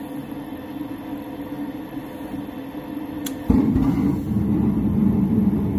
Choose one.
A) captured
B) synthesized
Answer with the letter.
A